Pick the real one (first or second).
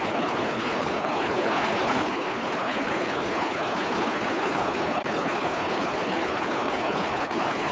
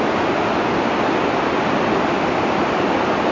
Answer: second